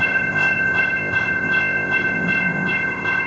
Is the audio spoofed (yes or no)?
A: yes